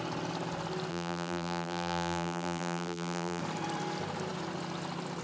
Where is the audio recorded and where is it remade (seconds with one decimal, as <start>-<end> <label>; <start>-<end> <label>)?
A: 0.0-0.9 recorded; 0.9-3.4 remade; 3.4-5.2 recorded